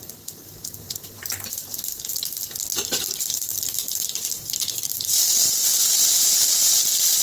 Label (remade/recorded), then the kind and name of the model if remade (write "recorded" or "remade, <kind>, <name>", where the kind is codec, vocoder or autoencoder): remade, vocoder, BigVGAN v2